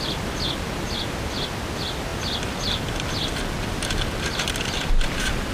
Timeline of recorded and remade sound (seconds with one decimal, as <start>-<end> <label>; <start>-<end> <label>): 0.0-5.5 recorded